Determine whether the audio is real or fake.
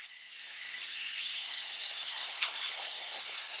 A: fake